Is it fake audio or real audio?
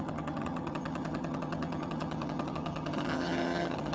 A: fake